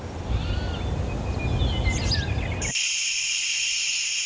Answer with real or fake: real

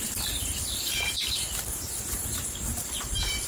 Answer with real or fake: fake